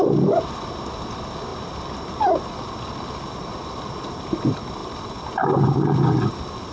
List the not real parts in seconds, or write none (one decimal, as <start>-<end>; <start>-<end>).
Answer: none